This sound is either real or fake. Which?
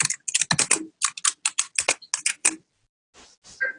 real